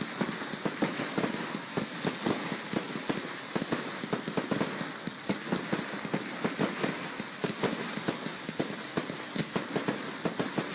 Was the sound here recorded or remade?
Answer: recorded